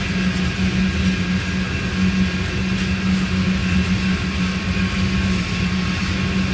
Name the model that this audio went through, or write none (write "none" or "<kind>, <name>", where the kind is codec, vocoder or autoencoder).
none